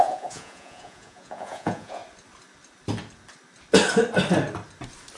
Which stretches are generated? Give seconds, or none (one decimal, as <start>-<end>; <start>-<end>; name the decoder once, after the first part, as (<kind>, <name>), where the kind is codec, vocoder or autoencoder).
0.0-2.0 (vocoder, Vocos)